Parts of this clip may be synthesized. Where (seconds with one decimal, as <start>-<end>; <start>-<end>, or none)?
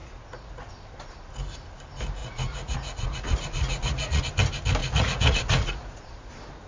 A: 0.0-0.7; 2.2-4.2; 4.8-6.3